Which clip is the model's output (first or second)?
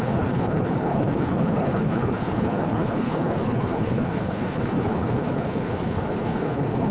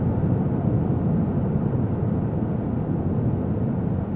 first